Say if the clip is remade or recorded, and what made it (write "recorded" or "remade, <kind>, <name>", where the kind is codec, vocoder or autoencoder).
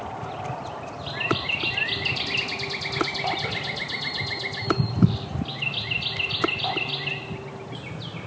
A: recorded